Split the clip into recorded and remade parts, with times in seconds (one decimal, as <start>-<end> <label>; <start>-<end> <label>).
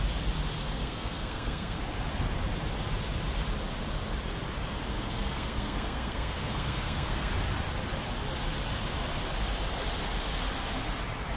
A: 0.0-0.6 recorded; 0.6-1.8 remade; 1.8-4.9 recorded; 4.9-7.3 remade; 7.3-11.4 recorded